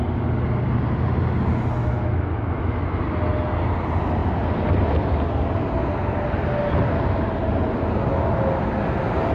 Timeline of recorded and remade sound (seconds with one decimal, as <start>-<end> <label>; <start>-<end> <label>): 0.0-1.8 recorded; 1.8-3.0 remade; 3.0-9.3 recorded